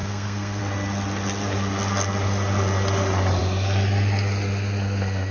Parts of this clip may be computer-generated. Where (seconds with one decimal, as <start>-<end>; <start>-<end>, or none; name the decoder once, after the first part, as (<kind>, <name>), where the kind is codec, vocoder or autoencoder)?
0.0-0.6 (codec, SNAC)